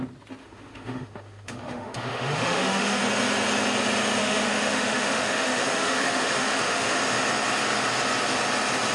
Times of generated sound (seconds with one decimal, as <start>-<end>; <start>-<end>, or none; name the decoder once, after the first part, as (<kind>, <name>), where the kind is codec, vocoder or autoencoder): 0.4-3.0 (autoencoder, DAC-VAE); 4.2-7.0